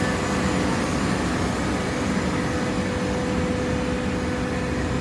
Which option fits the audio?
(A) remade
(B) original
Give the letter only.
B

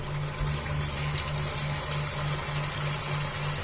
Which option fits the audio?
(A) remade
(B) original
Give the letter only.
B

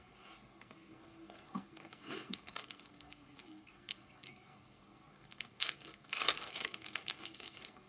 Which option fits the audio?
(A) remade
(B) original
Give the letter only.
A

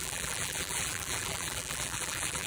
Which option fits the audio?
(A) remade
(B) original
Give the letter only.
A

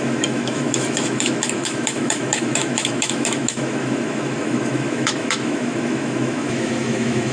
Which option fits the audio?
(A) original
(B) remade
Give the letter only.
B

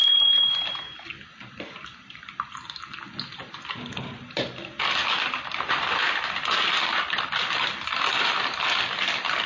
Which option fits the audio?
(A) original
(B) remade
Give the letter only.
B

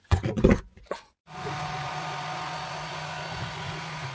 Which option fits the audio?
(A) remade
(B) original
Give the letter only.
A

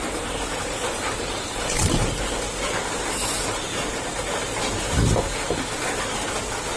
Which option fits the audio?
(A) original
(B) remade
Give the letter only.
A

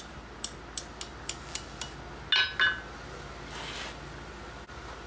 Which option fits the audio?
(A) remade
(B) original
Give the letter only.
B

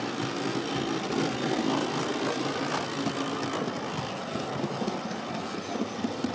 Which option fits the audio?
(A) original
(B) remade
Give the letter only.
A